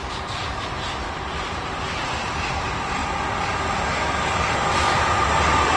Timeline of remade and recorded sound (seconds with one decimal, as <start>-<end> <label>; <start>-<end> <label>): 0.0-0.6 recorded; 0.6-3.0 remade; 3.0-5.8 recorded